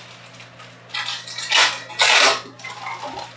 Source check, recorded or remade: recorded